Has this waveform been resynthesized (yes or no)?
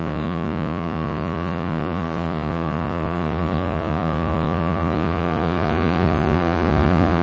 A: yes